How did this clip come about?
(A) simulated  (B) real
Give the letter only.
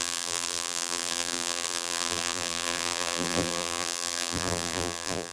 A